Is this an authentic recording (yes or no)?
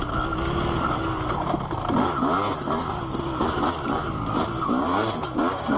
yes